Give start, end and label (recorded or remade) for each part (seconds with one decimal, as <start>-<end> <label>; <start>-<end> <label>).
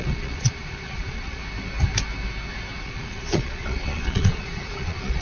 0.0-1.4 remade; 1.4-2.8 recorded; 2.8-5.2 remade